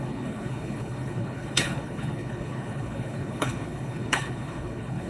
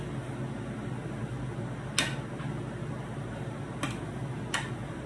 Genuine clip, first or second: second